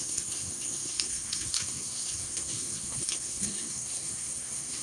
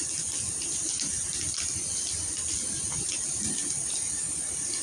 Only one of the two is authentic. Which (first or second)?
second